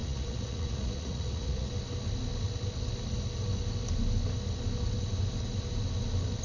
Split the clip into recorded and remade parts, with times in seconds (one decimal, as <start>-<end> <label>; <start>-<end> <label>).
0.0-1.7 remade; 1.7-6.4 recorded